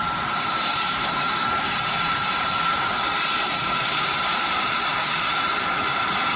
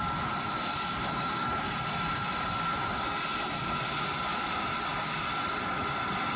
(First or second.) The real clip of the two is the second